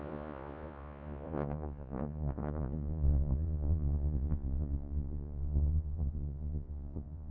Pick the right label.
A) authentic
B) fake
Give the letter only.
B